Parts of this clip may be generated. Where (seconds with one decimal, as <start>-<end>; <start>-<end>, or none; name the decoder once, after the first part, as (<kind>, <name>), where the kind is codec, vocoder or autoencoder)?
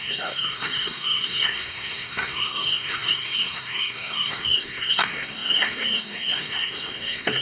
0.0-7.4 (codec, SNAC)